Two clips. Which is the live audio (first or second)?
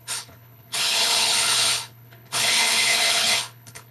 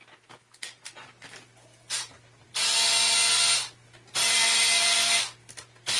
second